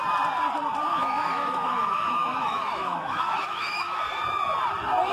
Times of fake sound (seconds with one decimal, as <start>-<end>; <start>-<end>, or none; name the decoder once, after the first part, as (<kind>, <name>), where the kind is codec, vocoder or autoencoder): 0.9-4.0 (autoencoder, DAC-VAE)